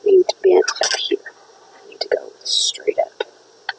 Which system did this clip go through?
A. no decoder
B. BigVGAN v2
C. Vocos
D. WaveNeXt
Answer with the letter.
A